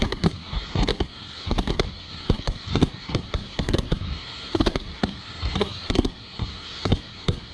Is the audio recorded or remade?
remade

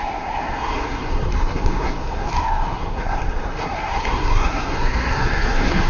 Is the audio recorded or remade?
remade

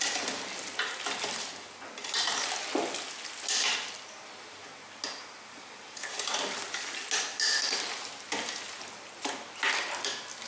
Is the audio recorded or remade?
recorded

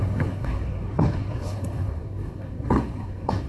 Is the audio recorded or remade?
remade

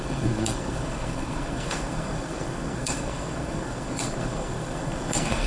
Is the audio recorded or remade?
remade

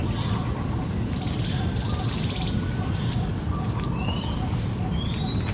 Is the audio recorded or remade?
recorded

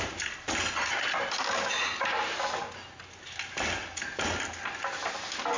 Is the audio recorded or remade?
recorded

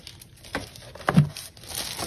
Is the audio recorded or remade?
recorded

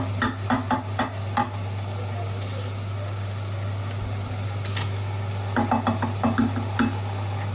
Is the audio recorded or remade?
recorded